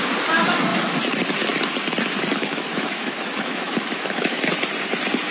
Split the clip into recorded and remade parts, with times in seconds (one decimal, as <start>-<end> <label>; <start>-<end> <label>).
0.0-2.3 recorded; 2.3-4.4 remade; 4.4-5.3 recorded